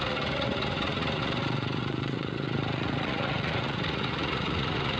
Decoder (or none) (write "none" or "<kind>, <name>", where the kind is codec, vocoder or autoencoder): vocoder, Vocos